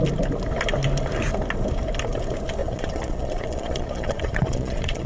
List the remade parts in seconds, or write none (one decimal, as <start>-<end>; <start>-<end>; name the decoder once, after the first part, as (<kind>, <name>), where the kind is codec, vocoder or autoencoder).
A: 2.6-5.1 (vocoder, Vocos)

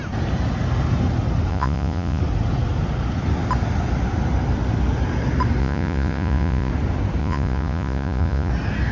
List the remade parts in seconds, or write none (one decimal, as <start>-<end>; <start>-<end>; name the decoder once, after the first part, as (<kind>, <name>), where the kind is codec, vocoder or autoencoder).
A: 1.5-2.2 (vocoder, Vocos); 5.6-6.7; 7.2-8.5